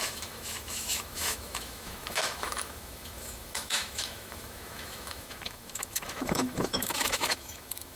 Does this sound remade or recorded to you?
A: remade